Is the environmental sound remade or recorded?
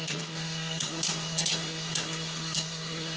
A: remade